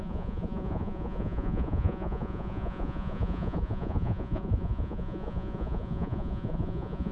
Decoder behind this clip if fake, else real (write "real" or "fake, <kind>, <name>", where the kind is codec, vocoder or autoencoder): fake, vocoder, Vocos